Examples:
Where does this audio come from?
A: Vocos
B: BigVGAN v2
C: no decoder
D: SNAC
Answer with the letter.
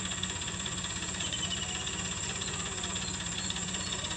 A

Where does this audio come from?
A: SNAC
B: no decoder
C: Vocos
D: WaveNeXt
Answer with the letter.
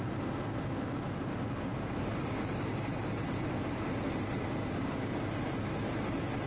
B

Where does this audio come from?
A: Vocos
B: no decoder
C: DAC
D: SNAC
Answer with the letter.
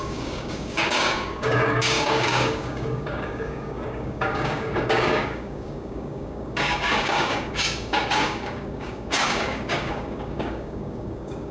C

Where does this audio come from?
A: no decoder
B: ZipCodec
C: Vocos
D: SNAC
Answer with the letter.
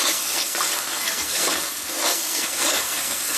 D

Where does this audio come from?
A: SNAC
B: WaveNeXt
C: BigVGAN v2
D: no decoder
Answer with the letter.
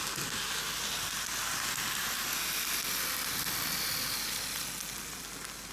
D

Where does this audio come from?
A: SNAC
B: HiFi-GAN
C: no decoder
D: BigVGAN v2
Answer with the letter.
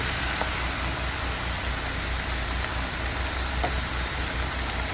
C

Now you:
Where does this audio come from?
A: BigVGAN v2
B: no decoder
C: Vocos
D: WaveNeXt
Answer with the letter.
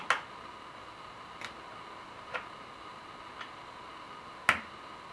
B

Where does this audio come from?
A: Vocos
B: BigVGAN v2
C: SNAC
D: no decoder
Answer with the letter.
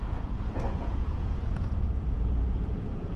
A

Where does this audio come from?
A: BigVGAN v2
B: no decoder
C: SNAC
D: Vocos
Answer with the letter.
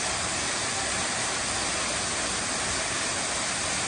B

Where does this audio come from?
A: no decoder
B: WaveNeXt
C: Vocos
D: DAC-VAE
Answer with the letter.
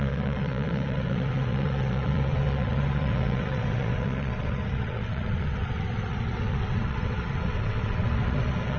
B